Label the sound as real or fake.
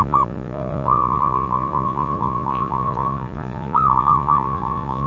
fake